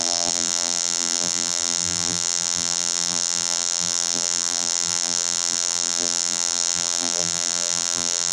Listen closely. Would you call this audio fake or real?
fake